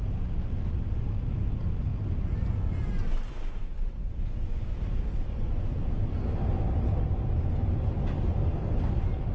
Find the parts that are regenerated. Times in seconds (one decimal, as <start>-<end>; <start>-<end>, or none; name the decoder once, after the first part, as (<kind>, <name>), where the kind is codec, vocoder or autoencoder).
none